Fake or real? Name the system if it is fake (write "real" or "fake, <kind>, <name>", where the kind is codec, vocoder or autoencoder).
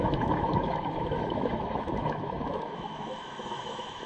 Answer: fake, autoencoder, DAC-VAE